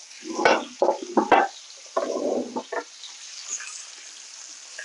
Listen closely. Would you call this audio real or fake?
real